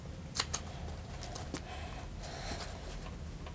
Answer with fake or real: real